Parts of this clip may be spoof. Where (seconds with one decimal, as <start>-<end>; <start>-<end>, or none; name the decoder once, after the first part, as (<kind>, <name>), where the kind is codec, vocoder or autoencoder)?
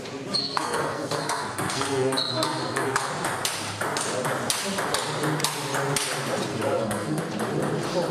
0.4-3.1 (codec, SNAC); 6.5-7.2